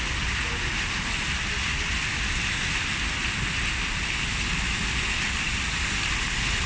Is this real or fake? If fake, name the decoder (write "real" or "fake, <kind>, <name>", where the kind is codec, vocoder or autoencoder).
real